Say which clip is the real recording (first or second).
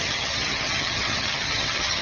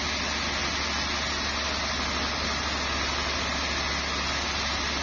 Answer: second